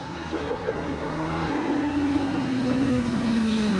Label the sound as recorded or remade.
remade